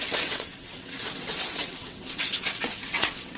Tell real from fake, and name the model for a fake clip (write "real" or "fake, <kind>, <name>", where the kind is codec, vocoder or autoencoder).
fake, vocoder, WaveNeXt